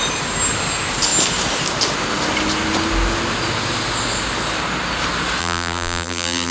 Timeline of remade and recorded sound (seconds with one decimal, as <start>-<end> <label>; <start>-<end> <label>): 0.0-5.4 recorded; 5.4-6.5 remade